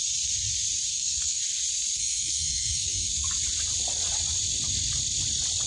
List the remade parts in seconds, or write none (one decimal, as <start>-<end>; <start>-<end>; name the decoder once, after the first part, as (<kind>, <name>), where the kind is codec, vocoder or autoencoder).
0.9-1.4 (codec, SNAC); 2.0-3.1